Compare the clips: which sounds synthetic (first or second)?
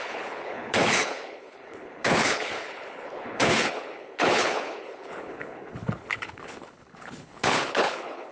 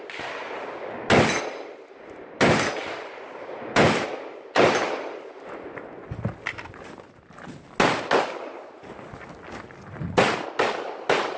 first